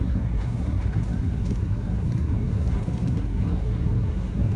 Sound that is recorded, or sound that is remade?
remade